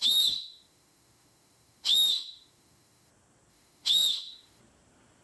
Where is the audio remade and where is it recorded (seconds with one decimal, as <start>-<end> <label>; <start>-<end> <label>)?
0.0-3.1 remade; 3.1-3.5 recorded; 3.5-4.6 remade; 4.6-5.2 recorded